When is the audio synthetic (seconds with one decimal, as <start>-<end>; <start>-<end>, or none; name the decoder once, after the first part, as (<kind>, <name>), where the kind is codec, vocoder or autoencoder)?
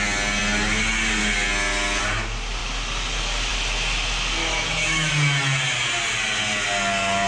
4.4-5.1 (autoencoder, DAC-VAE)